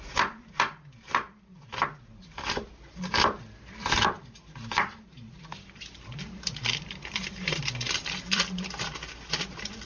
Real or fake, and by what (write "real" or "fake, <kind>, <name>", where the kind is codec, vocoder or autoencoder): fake, vocoder, BigVGAN v2